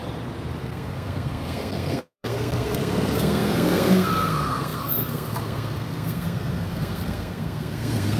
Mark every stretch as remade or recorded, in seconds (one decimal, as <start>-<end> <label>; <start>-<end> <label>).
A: 0.0-0.6 recorded; 0.6-8.2 remade